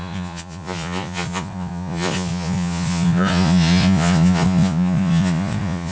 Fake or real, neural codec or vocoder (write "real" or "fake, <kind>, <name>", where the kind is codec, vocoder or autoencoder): fake, vocoder, Vocos